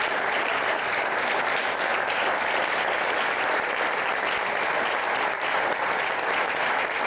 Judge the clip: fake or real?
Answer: real